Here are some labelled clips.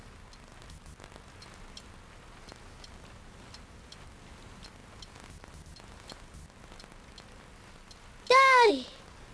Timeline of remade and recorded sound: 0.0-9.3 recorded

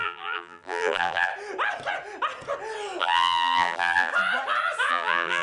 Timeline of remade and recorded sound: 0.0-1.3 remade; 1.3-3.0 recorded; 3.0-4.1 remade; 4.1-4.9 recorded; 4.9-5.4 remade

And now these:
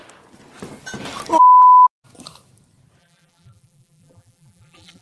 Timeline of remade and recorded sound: 0.0-3.0 recorded; 3.0-5.0 remade

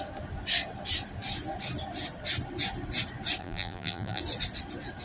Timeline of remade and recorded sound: 0.0-3.4 recorded; 3.4-4.2 remade; 4.2-5.0 recorded

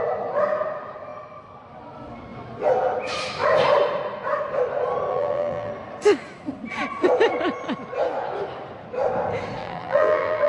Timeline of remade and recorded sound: 0.0-5.1 recorded; 5.1-5.7 remade; 5.7-9.6 recorded; 9.6-10.5 remade

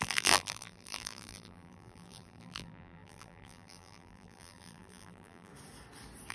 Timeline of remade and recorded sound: 0.0-5.5 remade; 5.5-6.3 recorded

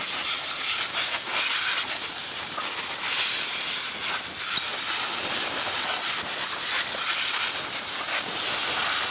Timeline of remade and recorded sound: 0.0-1.5 recorded; 1.5-3.6 remade; 3.6-4.7 recorded; 4.7-7.3 remade; 7.3-9.1 recorded